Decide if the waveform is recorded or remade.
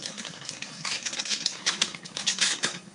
remade